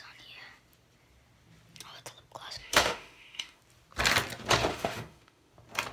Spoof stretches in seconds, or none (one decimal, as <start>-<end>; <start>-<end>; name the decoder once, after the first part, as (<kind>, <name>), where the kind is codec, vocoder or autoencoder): 2.6-3.6 (autoencoder, DAC-VAE); 4.7-5.5